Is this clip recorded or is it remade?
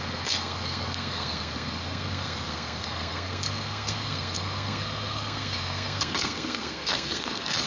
remade